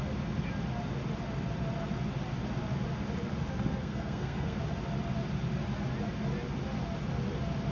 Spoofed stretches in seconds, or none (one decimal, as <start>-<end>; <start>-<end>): 3.7-4.6